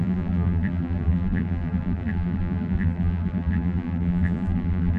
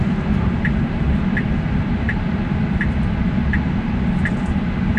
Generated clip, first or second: first